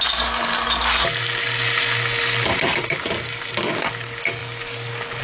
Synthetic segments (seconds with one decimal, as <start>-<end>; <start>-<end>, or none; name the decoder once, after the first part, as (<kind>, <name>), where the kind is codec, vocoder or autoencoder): 0.0-0.5 (codec, DAC); 3.6-5.2